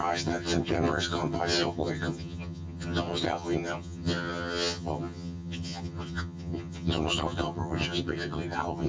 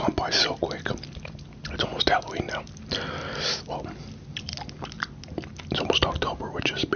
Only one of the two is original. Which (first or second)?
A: second